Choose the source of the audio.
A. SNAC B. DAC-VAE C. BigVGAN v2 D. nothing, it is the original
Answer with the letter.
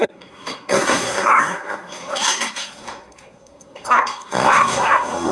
A